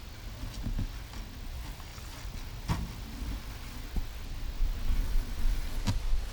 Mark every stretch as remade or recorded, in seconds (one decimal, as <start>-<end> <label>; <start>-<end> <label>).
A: 0.0-6.3 recorded